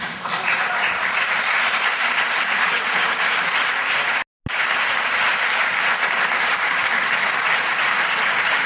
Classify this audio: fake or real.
real